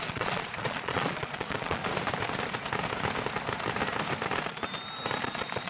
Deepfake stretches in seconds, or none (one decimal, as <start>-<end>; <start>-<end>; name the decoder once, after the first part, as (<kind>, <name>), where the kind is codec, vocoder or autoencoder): 0.0-1.8 (vocoder, Vocos); 5.2-5.7